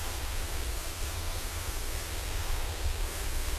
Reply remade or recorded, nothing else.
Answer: remade